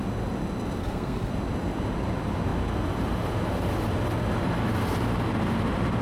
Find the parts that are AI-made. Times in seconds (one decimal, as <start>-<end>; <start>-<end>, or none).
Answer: 0.8-1.3